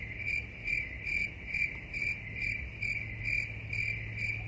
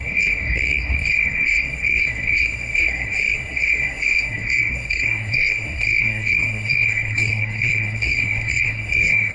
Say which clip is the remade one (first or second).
second